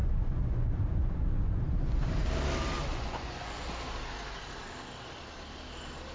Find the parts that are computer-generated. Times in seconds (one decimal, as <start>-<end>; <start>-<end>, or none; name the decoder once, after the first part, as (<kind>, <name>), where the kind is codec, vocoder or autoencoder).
0.0-2.1 (vocoder, Vocos); 2.9-3.7